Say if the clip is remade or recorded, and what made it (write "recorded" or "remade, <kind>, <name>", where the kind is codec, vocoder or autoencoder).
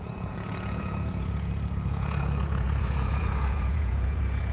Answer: remade, vocoder, Vocos